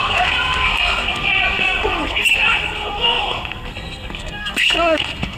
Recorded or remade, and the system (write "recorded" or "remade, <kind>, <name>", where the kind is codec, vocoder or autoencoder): remade, codec, SNAC